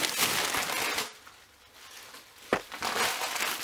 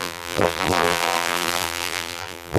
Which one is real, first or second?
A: first